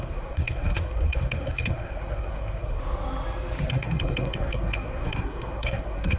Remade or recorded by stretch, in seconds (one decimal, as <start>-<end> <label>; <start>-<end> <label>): 0.0-2.8 remade; 2.8-3.7 recorded; 3.7-6.2 remade